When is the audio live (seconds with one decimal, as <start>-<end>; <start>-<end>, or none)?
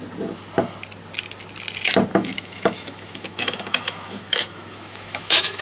0.0-2.1